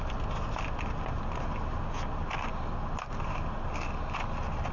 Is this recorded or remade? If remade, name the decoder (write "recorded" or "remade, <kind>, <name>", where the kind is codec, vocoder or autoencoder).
recorded